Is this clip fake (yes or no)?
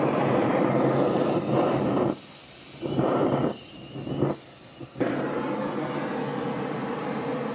no